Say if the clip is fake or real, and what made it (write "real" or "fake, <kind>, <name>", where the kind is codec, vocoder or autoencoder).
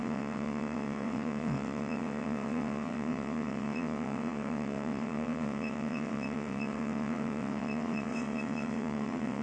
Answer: fake, vocoder, WaveNeXt